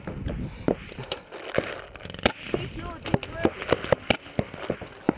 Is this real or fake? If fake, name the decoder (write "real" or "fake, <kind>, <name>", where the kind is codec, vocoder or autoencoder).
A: real